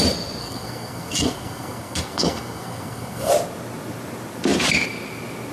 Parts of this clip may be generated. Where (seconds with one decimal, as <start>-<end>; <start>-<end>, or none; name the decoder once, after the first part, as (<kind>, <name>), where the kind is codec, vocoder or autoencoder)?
0.4-3.3 (codec, SNAC)